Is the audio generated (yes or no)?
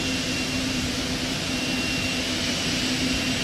no